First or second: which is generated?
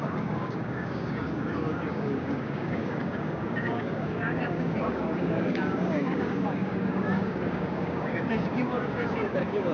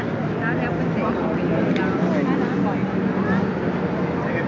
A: first